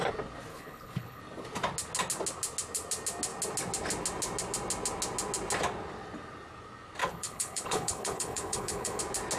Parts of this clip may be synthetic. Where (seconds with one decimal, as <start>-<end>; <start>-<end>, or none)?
0.5-1.2; 7.0-9.0